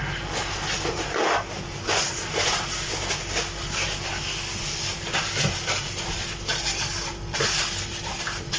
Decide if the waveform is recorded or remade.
recorded